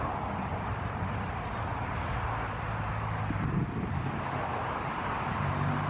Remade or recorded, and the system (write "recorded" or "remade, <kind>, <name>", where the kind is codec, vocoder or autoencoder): recorded